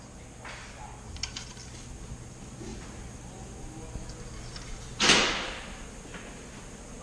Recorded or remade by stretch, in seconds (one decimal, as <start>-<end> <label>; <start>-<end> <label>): 0.0-7.0 recorded